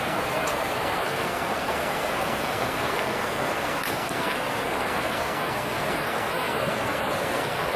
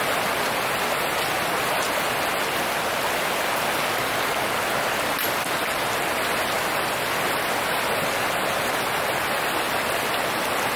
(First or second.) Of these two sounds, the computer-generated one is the first